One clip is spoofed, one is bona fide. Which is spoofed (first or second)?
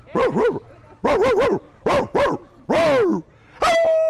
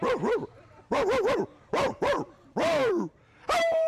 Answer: second